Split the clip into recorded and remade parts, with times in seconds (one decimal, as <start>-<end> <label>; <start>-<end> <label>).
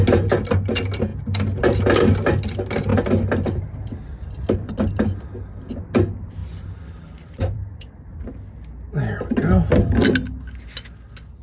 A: 0.0-2.9 recorded; 2.9-4.7 remade; 4.7-6.4 recorded; 6.4-8.2 remade; 8.2-11.4 recorded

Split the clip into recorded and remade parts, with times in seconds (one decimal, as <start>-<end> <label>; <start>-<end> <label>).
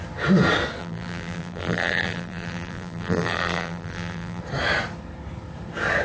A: 0.0-0.8 recorded; 0.8-4.4 remade; 4.4-6.0 recorded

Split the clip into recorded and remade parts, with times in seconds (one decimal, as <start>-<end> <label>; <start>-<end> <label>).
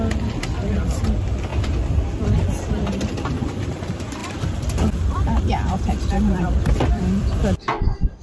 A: 0.0-8.2 remade